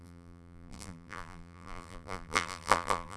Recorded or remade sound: remade